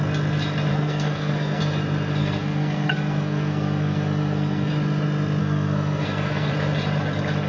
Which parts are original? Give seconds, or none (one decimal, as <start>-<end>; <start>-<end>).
0.0-0.7; 1.6-2.2; 4.7-5.4; 6.5-7.5